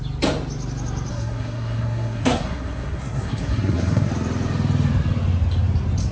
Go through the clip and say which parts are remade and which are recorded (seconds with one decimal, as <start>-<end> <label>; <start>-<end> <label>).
0.0-1.1 recorded; 1.1-4.1 remade; 4.1-6.1 recorded